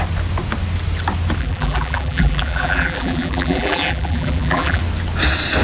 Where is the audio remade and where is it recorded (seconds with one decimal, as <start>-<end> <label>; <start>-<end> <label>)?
0.0-1.4 recorded; 1.4-4.8 remade; 4.8-5.6 recorded